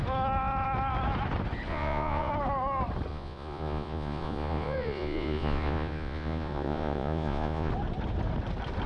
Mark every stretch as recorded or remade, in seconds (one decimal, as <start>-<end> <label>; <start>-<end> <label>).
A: 0.0-1.7 recorded; 1.7-2.3 remade; 2.3-3.1 recorded; 3.1-7.7 remade; 7.7-8.9 recorded